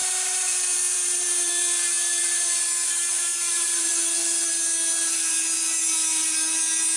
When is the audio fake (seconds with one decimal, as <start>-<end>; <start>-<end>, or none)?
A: 0.0-1.8; 2.2-3.9